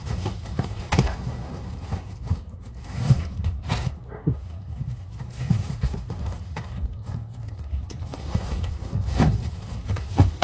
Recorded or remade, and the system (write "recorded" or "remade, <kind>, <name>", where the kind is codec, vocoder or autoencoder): remade, codec, SNAC